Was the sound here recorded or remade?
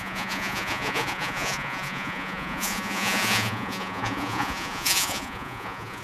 remade